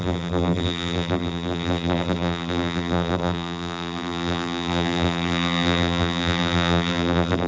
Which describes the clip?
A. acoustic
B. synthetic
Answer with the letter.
B